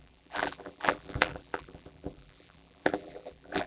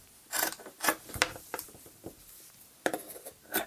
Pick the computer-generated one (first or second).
first